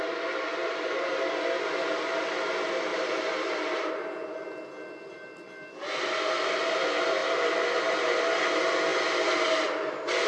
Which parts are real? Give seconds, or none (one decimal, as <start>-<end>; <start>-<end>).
0.0-0.6; 1.1-2.9; 3.9-10.3